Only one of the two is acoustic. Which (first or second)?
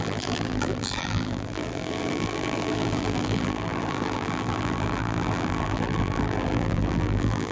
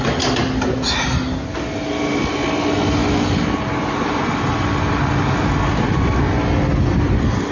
second